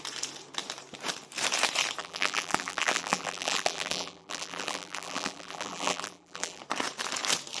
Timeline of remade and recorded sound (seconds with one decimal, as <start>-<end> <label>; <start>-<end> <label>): 0.0-2.0 recorded; 2.0-6.6 remade; 6.6-7.6 recorded